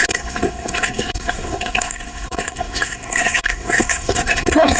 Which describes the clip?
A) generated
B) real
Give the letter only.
A